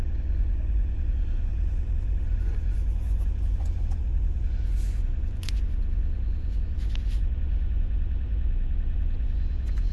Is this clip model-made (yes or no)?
yes